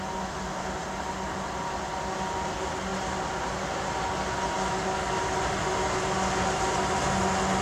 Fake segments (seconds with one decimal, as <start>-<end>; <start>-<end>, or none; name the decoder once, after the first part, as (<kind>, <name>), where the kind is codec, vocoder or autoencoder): none